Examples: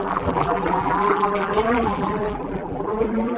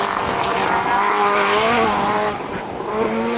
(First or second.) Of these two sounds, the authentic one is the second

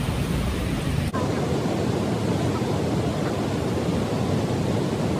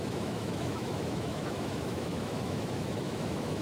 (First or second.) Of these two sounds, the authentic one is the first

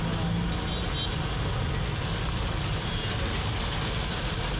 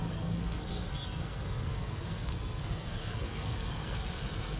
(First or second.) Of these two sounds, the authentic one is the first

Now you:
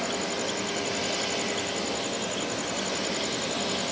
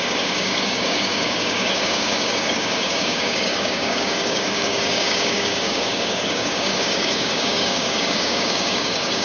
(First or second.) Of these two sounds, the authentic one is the first